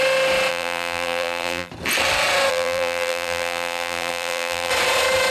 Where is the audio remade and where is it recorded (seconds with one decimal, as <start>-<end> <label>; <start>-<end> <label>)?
0.0-0.5 recorded; 0.5-1.7 remade; 1.7-2.5 recorded; 2.5-4.7 remade; 4.7-5.3 recorded